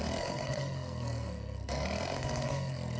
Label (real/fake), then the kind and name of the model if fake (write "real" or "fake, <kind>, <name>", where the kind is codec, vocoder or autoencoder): fake, codec, SNAC